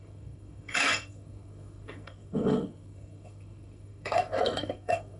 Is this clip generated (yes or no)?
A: yes